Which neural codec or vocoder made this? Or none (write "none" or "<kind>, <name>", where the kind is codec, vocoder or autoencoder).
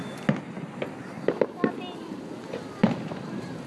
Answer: none